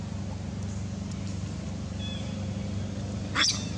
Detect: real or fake real